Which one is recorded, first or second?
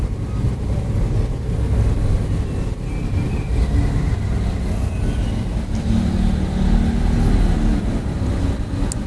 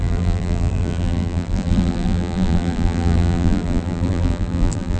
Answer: first